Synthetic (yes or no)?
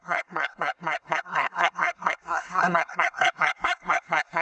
yes